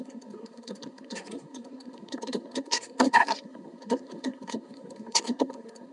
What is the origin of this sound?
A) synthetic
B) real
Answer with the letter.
A